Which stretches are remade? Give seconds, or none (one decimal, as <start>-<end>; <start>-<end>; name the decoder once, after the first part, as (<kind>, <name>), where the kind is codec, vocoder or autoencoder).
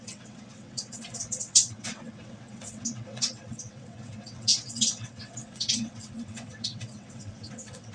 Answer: 0.0-7.9 (vocoder, WaveNeXt)